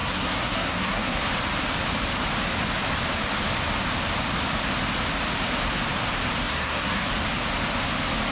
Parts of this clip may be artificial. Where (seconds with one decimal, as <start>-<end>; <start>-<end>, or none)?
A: 0.0-1.2; 6.4-7.1